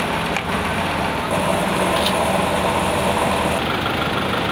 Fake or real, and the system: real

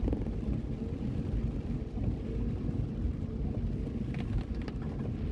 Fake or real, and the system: real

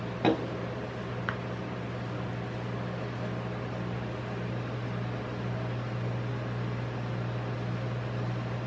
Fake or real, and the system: real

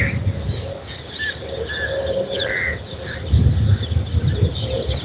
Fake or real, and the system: real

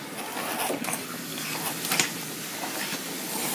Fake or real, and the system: real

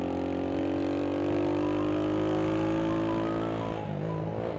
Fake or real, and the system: real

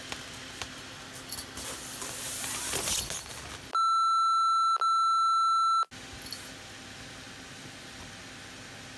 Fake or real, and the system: real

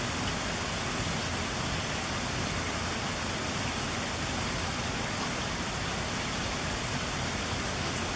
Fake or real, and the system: real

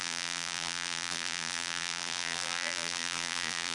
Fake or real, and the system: fake, vocoder, BigVGAN v2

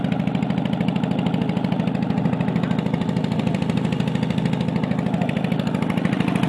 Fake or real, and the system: real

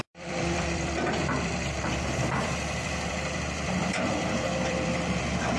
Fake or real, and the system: fake, vocoder, BigVGAN v2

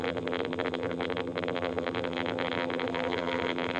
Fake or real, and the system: fake, vocoder, BigVGAN v2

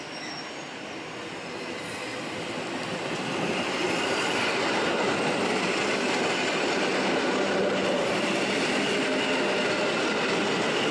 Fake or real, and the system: real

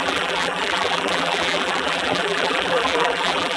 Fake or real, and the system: fake, vocoder, BigVGAN v2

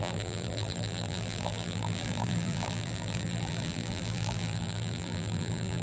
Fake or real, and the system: fake, vocoder, BigVGAN v2